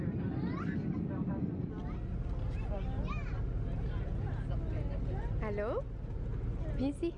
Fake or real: real